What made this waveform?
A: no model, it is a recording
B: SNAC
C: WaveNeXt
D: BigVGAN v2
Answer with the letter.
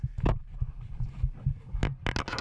A